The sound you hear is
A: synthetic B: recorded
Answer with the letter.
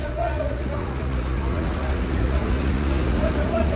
A